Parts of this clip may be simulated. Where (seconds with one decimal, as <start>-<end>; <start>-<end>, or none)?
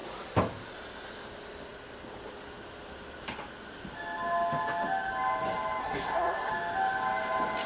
5.8-6.5